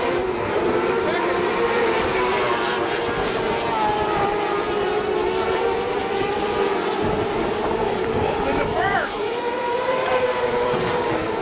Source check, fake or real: fake